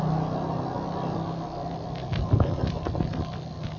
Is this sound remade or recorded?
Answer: recorded